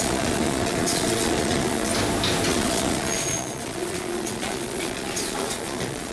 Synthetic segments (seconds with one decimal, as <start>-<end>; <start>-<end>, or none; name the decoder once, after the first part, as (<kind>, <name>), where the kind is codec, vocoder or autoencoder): 0.0-1.9 (vocoder, Vocos); 2.5-6.1